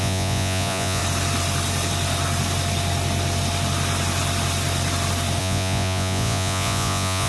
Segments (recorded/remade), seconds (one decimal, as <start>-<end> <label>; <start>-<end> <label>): 0.0-1.0 remade; 1.0-5.4 recorded; 5.4-7.3 remade